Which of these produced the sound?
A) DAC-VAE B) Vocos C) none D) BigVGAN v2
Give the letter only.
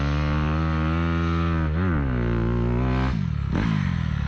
C